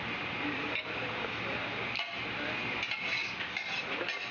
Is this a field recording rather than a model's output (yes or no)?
yes